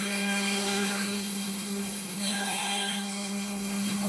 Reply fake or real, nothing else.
fake